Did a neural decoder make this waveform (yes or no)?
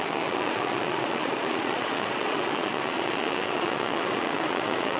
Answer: yes